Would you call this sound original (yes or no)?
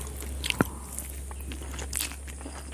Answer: yes